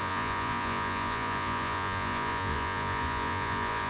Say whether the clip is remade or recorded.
remade